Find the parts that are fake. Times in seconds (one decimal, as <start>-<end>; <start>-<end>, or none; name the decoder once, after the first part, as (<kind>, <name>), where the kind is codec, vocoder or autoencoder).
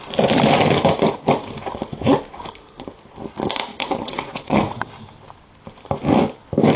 3.7-4.9 (vocoder, WaveNeXt)